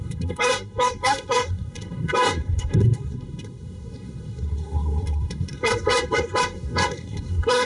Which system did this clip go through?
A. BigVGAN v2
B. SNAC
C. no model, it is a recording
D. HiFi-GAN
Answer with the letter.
B